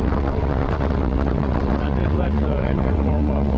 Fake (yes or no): yes